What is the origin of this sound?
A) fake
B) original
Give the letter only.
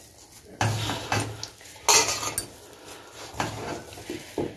B